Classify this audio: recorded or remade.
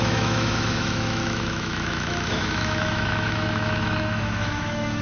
remade